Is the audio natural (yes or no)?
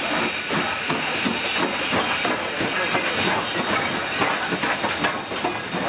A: yes